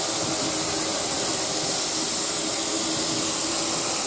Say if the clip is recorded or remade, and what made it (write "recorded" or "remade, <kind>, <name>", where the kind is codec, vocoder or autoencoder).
recorded